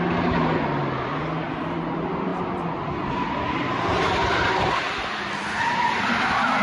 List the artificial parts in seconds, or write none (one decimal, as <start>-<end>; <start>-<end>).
none